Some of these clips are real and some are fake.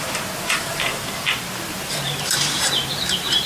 fake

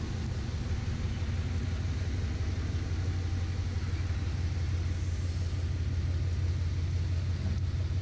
real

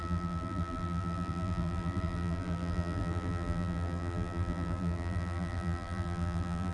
fake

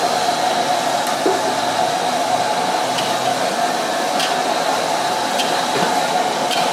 real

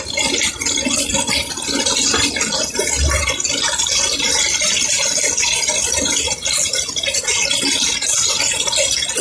real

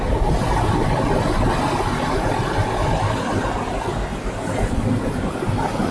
real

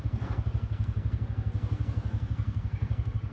fake